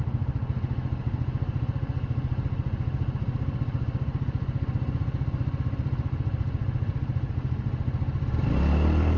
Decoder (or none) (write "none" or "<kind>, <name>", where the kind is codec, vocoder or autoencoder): none